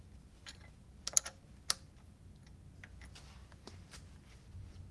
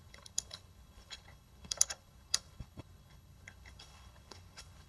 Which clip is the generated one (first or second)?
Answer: second